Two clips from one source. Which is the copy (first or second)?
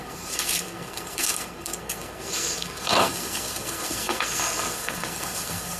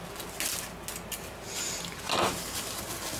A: first